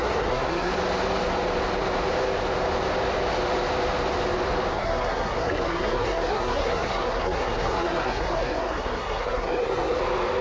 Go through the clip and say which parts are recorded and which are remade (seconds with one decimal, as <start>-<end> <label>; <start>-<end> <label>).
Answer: 0.0-0.7 remade; 0.7-4.7 recorded; 4.7-10.0 remade; 10.0-10.4 recorded